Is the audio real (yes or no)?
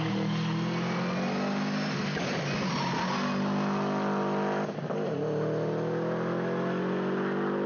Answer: yes